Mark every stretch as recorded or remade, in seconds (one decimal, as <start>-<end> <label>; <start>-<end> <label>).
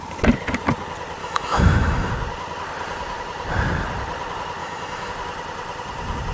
0.0-1.2 recorded; 1.2-2.1 remade; 2.1-4.6 recorded; 4.6-5.1 remade; 5.1-6.3 recorded